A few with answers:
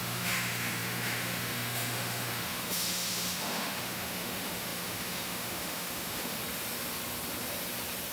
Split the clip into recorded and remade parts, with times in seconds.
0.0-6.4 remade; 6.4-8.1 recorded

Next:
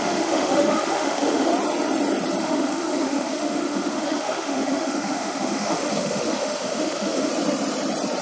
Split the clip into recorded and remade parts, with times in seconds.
0.0-1.5 remade; 1.5-2.4 recorded; 2.4-7.3 remade; 7.3-8.2 recorded